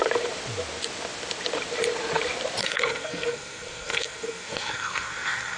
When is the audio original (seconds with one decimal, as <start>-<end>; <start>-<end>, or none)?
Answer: 0.0-2.6